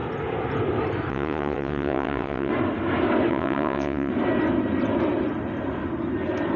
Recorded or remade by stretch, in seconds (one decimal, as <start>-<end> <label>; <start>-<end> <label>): 0.0-1.1 recorded; 1.1-2.5 remade; 2.5-3.3 recorded; 3.3-4.1 remade; 4.1-6.6 recorded